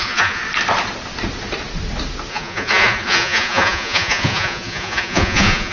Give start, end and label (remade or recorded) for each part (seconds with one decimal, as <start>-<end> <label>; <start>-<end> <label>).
0.0-0.4 remade; 0.4-2.3 recorded; 2.3-5.7 remade